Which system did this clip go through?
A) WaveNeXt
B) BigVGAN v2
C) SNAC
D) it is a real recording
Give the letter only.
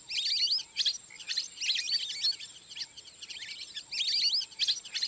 D